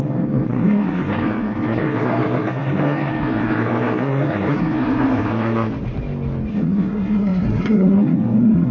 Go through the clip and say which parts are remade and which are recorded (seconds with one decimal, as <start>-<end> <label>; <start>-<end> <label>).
0.0-5.7 remade; 5.7-6.5 recorded; 6.5-8.7 remade